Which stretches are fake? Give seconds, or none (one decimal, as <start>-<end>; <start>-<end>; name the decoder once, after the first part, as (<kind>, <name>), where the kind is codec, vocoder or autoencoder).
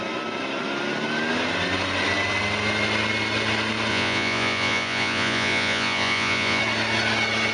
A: 3.9-6.6 (vocoder, Vocos)